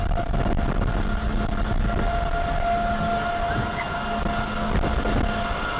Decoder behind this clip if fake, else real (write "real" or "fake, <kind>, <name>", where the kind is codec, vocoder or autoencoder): real